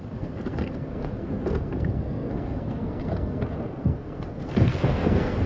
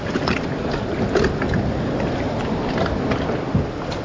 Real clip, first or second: second